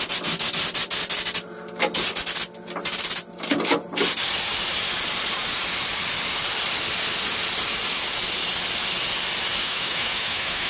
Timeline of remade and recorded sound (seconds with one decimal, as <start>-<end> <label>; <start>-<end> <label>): 0.0-9.6 recorded; 9.6-10.7 remade